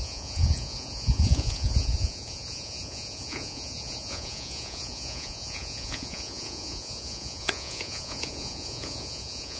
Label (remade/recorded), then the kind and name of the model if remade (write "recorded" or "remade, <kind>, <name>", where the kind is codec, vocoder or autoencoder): remade, vocoder, Vocos